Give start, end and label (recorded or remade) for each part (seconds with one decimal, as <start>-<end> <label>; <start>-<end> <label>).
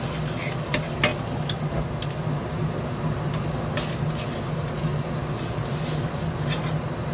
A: 0.0-7.1 recorded